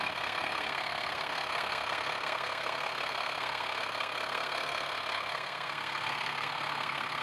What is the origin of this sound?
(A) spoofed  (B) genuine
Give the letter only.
A